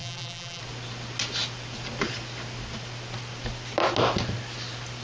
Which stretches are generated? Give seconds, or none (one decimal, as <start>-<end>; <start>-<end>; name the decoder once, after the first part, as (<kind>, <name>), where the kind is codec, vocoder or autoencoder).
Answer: 0.0-0.6 (vocoder, BigVGAN v2)

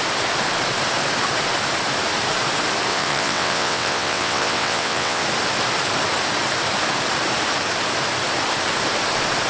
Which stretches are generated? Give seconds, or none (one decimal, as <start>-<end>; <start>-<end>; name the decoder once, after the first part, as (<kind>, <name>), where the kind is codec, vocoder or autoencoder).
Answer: 2.9-5.2 (vocoder, WaveNeXt)

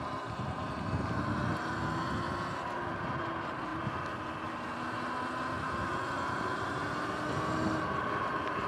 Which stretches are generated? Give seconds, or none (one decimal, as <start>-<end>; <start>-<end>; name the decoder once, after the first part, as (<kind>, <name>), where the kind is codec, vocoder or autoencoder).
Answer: none